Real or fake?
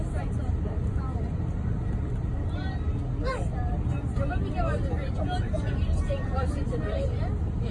real